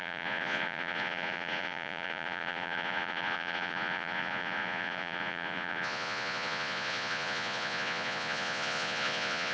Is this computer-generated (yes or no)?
yes